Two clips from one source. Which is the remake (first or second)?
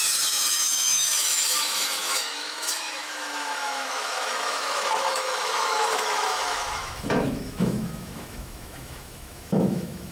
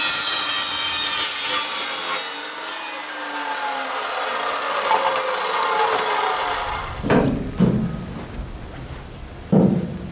first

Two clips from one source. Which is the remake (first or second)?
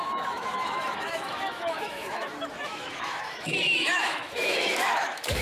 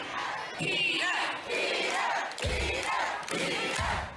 first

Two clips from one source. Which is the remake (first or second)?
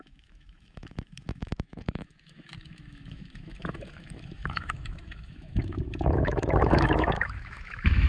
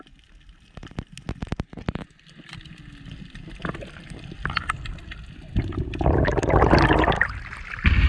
first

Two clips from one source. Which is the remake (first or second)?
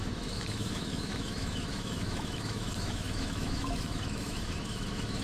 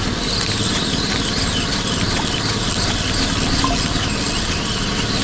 first